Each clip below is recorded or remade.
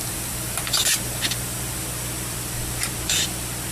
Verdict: remade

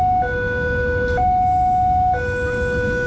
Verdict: recorded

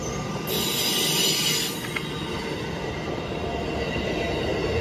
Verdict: recorded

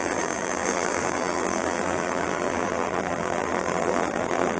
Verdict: remade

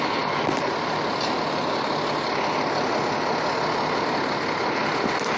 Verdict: recorded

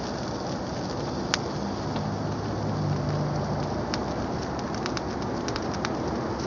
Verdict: recorded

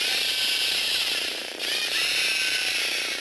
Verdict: remade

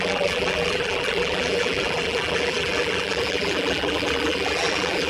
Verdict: remade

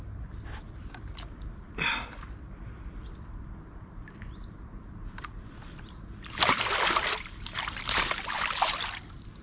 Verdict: remade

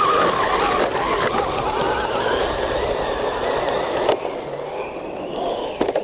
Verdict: recorded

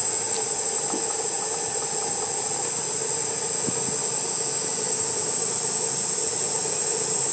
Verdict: recorded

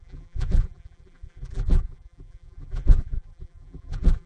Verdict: remade